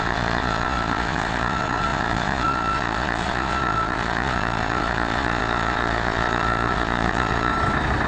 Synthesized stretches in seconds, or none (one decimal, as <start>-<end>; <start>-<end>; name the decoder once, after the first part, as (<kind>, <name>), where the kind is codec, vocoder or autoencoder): 0.0-7.5 (vocoder, Vocos)